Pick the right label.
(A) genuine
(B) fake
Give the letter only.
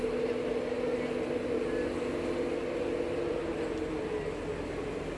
A